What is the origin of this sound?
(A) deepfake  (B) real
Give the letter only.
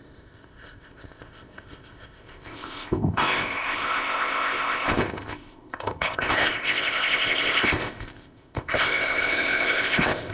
A